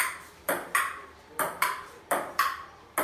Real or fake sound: real